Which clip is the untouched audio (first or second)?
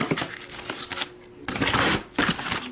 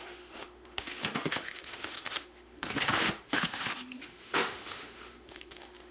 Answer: first